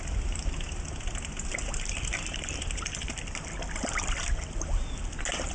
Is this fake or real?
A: real